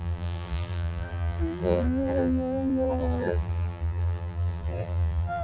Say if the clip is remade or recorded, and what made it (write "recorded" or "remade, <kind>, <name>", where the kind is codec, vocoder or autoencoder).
remade, vocoder, BigVGAN v2